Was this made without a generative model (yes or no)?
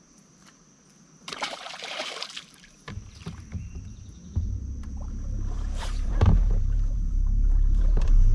no